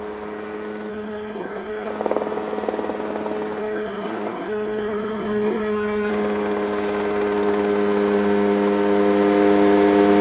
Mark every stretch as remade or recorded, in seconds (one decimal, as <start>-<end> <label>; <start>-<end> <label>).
0.0-0.9 recorded; 0.9-1.9 remade; 1.9-3.6 recorded; 3.6-6.1 remade; 6.1-10.2 recorded

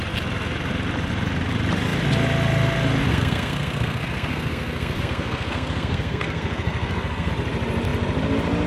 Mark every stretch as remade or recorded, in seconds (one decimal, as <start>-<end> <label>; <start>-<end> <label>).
0.0-3.1 recorded; 3.1-7.3 remade; 7.3-8.7 recorded